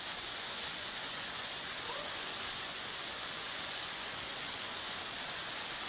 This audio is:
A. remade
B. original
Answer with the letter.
A